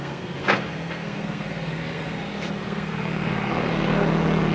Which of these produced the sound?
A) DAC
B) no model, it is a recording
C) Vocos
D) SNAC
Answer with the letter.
D